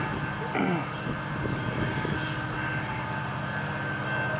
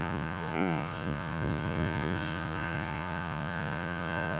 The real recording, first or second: first